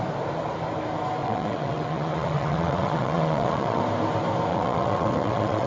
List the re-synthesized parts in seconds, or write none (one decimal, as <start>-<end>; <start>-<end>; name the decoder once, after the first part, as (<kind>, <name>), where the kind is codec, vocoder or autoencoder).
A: 1.2-3.8 (vocoder, WaveNeXt); 4.5-5.7